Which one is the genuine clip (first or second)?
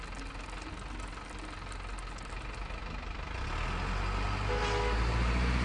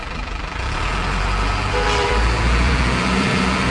first